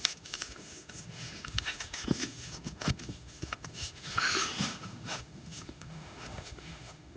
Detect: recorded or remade remade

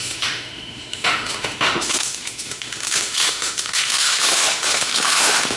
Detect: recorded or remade remade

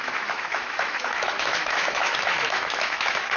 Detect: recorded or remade remade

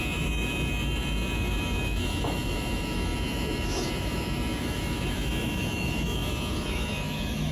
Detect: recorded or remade remade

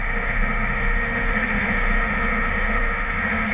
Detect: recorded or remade remade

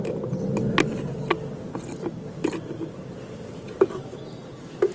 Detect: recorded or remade recorded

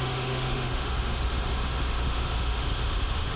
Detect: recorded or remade remade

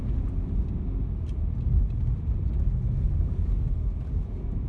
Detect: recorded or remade recorded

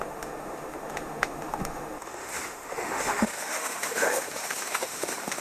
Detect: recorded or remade remade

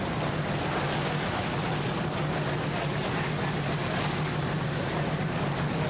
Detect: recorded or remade recorded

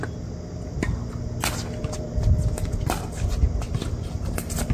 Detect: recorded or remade recorded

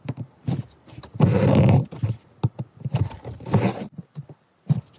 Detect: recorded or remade recorded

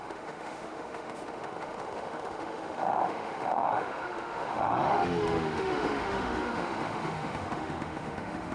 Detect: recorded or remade remade